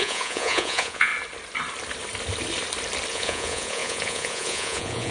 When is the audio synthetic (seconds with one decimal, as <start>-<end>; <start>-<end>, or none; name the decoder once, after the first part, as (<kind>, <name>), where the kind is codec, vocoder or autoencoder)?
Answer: 0.0-1.1 (vocoder, Vocos); 3.1-5.1